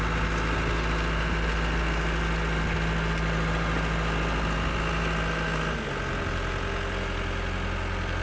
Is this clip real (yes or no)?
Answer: yes